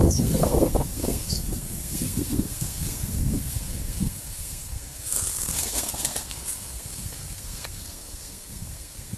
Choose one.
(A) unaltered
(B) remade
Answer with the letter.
B